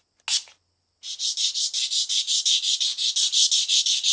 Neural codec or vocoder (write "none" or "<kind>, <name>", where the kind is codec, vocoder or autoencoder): none